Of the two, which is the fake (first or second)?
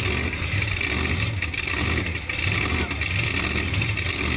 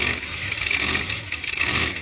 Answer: second